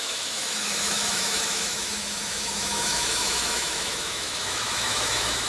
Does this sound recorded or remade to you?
remade